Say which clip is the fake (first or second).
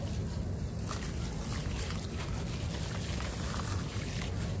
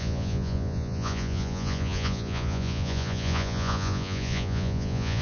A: second